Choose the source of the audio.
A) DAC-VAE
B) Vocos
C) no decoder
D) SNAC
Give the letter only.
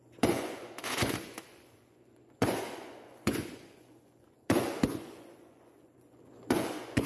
B